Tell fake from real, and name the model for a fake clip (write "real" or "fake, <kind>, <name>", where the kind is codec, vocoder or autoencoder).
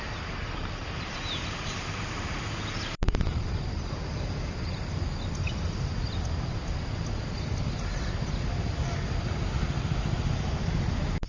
real